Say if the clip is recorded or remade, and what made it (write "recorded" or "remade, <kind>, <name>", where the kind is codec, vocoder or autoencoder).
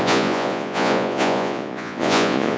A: remade, vocoder, Vocos